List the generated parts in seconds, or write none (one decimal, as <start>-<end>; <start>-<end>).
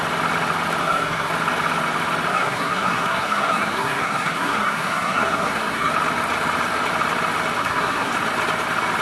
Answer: 0.8-1.3; 2.3-5.9; 7.6-8.1